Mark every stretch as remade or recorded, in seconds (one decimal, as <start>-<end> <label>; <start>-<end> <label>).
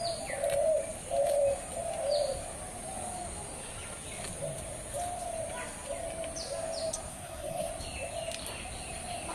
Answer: 0.0-7.1 recorded; 7.1-7.7 remade; 7.7-9.3 recorded